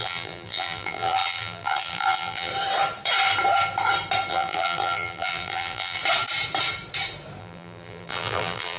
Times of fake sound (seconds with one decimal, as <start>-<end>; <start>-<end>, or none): 0.0-2.5; 4.3-6.0; 7.4-8.8